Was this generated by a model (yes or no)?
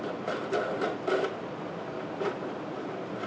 no